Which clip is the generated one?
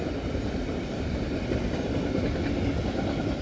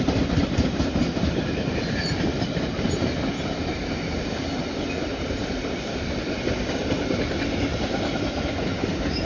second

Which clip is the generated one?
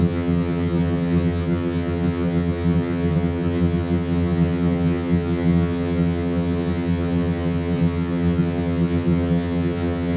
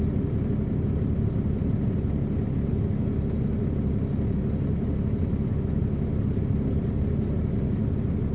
first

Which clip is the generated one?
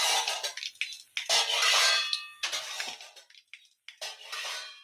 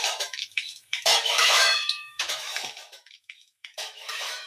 second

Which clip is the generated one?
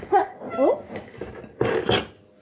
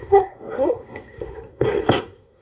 second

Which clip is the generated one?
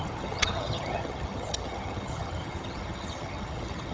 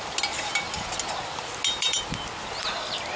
first